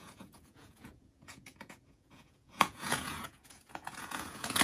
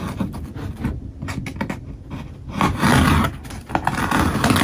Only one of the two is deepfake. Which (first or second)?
first